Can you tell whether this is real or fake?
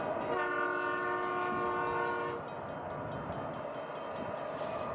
real